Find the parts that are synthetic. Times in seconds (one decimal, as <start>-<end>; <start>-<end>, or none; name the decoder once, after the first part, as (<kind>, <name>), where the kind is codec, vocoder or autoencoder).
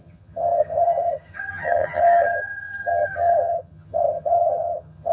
0.0-5.1 (vocoder, HiFi-GAN)